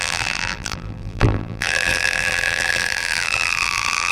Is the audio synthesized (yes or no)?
yes